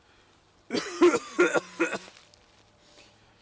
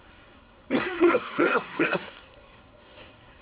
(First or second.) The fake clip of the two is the second